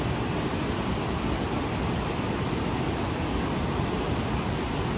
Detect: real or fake real